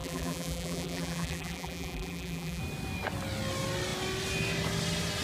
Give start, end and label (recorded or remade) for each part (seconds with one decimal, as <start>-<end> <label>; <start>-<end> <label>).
0.0-2.6 remade; 2.6-5.2 recorded